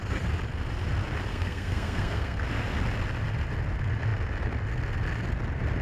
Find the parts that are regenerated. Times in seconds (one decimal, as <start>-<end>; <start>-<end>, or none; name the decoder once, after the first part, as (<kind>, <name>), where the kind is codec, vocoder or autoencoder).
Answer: 1.3-2.4 (codec, SNAC)